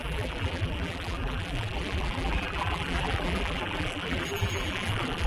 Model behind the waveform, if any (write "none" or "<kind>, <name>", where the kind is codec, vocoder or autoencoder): vocoder, BigVGAN v2